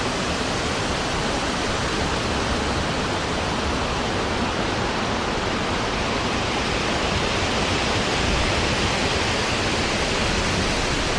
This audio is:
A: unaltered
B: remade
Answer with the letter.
B